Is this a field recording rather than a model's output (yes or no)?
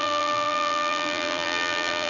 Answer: no